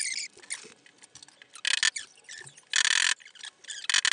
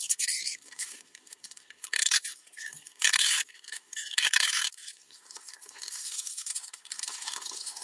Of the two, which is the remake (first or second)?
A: second